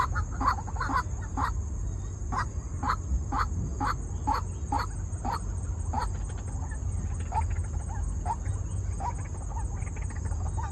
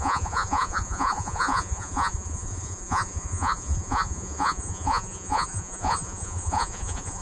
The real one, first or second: first